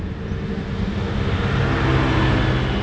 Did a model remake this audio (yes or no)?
no